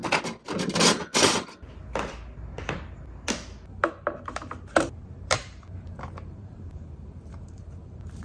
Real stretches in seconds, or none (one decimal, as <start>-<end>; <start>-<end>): 0.0-4.9